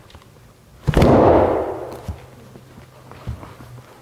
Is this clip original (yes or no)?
yes